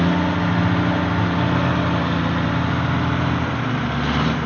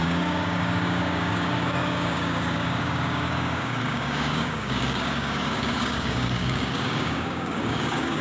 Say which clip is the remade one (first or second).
second